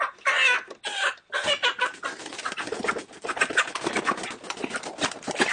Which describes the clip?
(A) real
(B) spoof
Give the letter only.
A